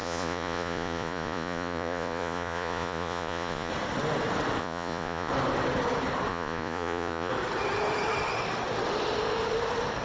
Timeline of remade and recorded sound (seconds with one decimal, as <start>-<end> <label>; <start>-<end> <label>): 0.0-3.7 remade; 3.7-4.6 recorded; 4.6-5.3 remade; 5.3-6.3 recorded; 6.3-7.3 remade; 7.3-10.0 recorded